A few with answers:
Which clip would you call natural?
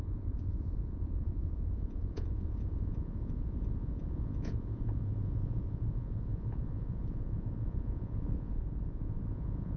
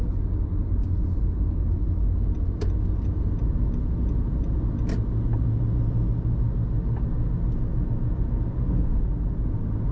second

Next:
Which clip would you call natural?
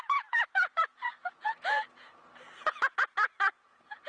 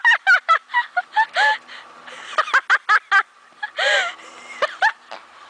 second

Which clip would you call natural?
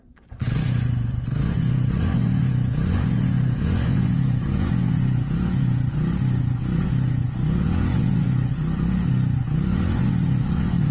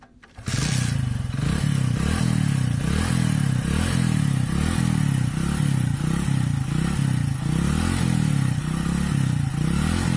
second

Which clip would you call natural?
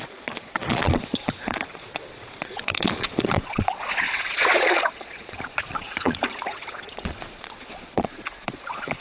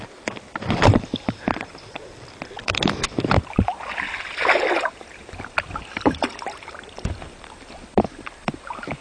second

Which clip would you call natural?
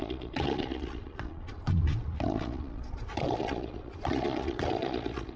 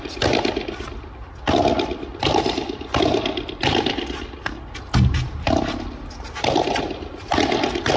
second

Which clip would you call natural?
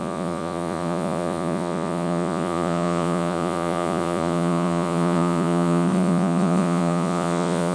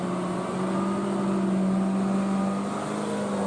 second